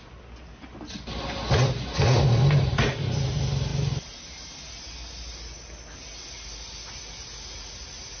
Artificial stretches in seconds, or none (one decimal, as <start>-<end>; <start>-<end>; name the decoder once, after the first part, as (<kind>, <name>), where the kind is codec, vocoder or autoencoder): none